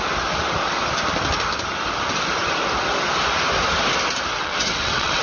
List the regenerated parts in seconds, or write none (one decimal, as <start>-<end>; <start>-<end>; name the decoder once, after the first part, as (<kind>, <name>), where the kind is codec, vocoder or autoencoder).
4.4-5.2 (vocoder, WaveNeXt)